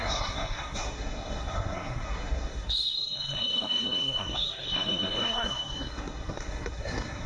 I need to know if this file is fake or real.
fake